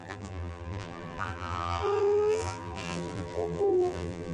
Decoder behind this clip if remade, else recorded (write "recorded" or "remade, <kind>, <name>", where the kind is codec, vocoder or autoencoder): remade, vocoder, BigVGAN v2